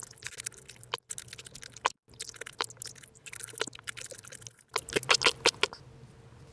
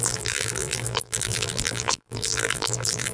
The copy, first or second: second